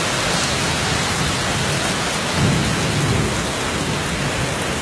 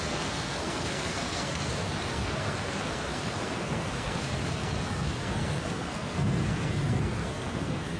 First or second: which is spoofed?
second